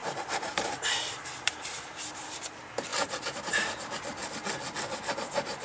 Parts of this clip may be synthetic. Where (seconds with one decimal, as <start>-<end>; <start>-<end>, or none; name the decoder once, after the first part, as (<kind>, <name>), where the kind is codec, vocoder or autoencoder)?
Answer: 0.0-4.2 (vocoder, BigVGAN v2); 5.0-5.6